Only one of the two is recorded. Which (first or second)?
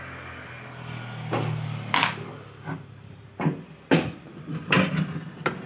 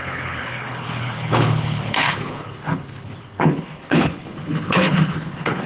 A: first